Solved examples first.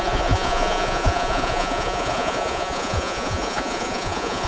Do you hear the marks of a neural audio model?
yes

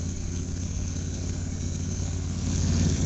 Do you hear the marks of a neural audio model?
yes